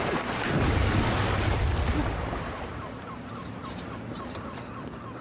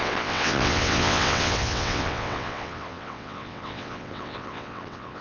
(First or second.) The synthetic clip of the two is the second